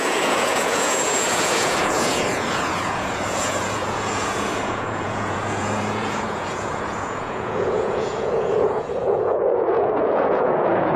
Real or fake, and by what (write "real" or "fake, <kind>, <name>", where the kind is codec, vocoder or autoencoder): fake, vocoder, Vocos